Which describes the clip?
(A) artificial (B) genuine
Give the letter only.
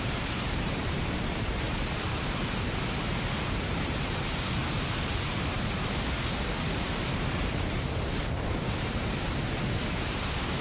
A